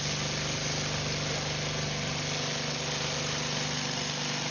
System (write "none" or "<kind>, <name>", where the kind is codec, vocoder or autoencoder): none